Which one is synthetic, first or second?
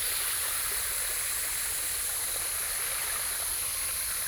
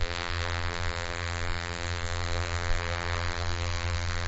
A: second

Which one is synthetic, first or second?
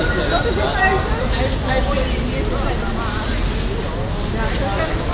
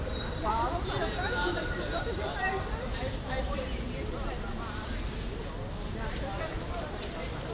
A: second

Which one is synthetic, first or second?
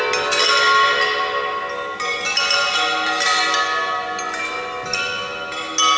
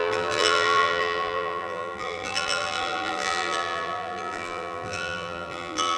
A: second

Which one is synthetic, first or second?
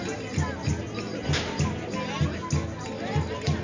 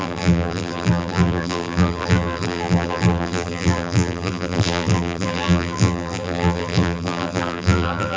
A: second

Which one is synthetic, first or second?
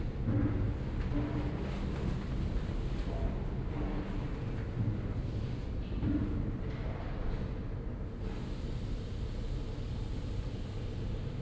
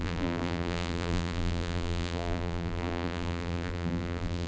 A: second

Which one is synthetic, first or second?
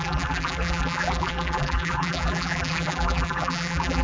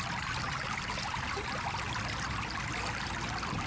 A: first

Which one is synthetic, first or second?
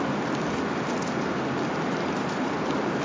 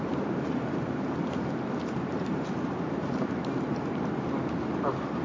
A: second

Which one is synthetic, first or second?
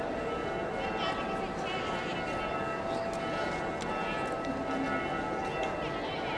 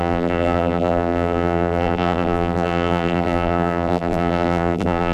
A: second